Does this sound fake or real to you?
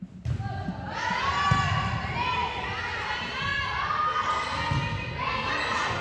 real